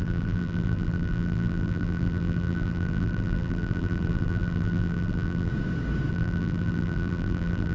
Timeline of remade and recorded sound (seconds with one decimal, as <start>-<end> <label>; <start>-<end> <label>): 0.0-5.5 remade; 5.5-6.1 recorded; 6.1-7.7 remade